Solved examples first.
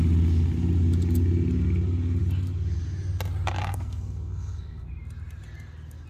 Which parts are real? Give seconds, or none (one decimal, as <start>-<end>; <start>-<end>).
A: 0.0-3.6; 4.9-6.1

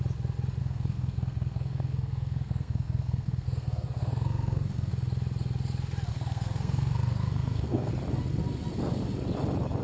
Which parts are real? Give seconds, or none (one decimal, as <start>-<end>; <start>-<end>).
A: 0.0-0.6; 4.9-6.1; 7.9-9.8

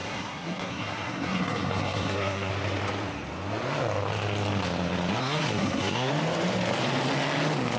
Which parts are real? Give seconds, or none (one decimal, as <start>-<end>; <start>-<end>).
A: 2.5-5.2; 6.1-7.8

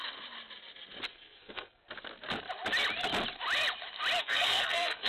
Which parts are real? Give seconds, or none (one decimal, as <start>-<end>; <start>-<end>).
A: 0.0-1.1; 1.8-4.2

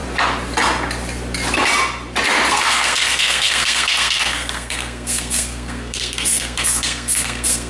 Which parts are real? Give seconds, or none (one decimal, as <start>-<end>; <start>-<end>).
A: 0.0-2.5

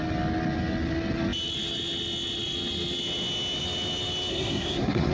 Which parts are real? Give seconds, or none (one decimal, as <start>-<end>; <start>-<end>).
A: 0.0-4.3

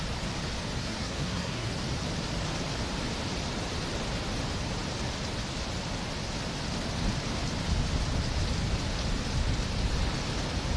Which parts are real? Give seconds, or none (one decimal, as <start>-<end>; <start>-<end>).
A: 0.0-0.8; 1.7-10.8

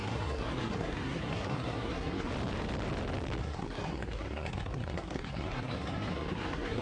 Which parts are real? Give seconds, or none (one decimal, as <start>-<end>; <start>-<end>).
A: 2.3-3.4